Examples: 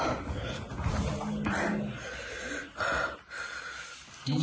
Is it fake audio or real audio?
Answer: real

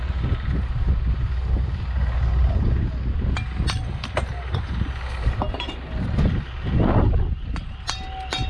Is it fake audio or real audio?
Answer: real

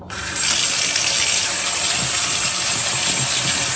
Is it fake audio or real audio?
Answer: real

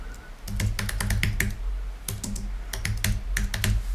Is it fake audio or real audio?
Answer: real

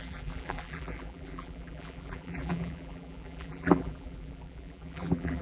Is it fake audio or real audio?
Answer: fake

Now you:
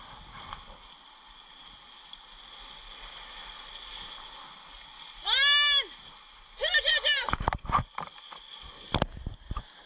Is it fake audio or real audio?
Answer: real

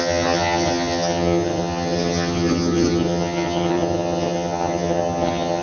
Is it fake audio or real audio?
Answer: fake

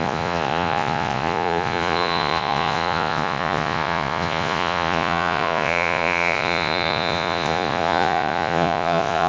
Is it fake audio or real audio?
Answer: fake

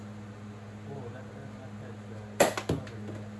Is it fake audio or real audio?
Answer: real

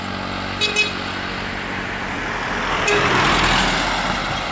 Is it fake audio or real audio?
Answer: real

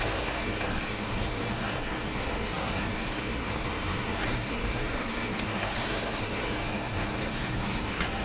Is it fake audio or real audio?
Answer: fake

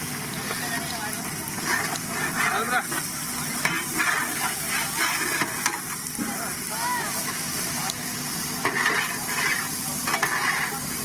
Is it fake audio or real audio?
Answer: real